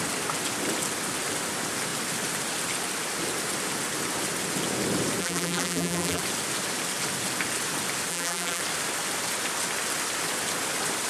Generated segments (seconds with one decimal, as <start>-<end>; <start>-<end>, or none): 5.2-6.2; 8.1-8.6